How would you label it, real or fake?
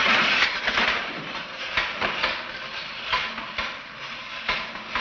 real